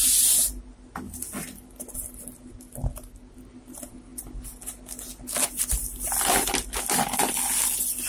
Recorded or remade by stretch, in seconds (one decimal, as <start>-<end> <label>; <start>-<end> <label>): 0.0-4.1 recorded; 4.1-4.9 remade; 4.9-8.1 recorded

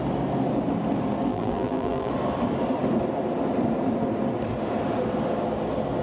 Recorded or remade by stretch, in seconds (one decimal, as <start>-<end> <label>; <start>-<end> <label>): 0.0-1.3 recorded; 1.3-2.1 remade; 2.1-6.0 recorded

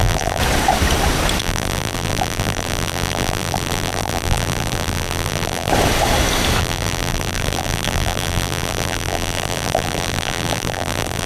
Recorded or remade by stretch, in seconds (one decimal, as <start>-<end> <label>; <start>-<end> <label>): 0.0-0.4 remade; 0.4-1.4 recorded; 1.4-5.7 remade; 5.7-6.6 recorded; 6.6-11.3 remade

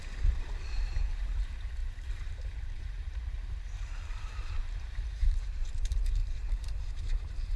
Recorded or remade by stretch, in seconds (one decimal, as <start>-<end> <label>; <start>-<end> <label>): 0.0-6.2 remade; 6.2-6.9 recorded; 6.9-7.6 remade

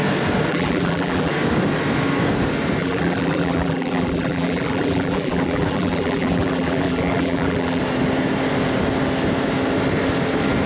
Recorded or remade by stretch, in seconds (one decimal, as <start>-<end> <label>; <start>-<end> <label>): 0.0-0.5 recorded; 0.5-1.3 remade; 1.3-2.8 recorded; 2.8-7.8 remade; 7.8-10.7 recorded

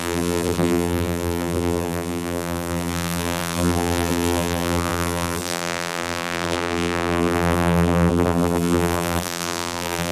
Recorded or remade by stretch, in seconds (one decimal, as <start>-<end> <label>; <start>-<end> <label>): 0.0-10.1 remade

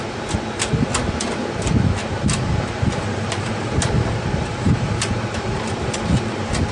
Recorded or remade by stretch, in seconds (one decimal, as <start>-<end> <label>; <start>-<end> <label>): 0.0-2.0 recorded; 2.0-6.0 remade; 6.0-6.7 recorded

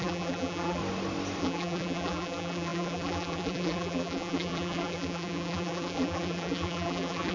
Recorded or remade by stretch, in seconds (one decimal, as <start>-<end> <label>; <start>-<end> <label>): 0.0-0.8 remade; 0.8-1.4 recorded; 1.4-7.3 remade